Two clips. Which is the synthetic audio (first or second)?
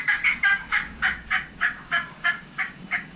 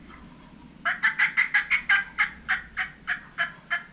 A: first